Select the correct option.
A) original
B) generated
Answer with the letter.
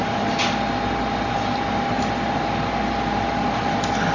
A